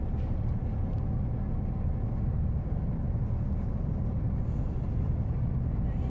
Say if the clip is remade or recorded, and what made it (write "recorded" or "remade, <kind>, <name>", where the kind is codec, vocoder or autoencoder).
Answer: remade, vocoder, BigVGAN v2